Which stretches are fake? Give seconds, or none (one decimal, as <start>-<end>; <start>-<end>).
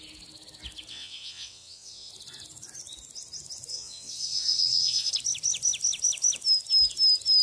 0.9-2.1; 3.7-5.1